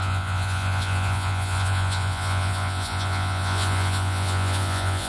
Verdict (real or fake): fake